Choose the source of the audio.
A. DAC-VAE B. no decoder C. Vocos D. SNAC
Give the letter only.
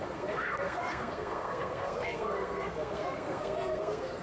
D